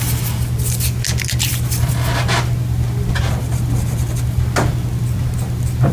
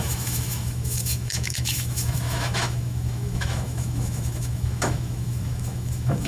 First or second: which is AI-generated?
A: second